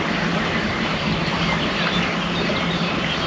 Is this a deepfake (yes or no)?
yes